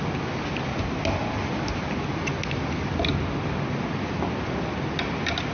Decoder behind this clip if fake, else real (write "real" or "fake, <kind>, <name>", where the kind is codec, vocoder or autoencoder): real